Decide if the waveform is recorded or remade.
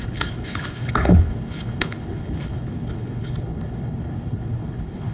remade